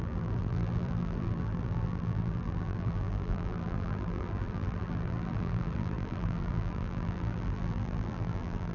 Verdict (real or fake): fake